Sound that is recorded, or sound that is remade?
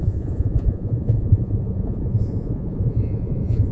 remade